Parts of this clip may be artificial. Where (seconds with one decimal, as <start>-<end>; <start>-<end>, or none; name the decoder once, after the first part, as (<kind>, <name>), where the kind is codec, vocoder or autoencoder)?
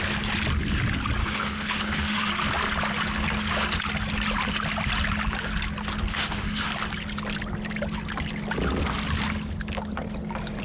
1.2-2.3 (autoencoder, DAC-VAE); 6.1-6.7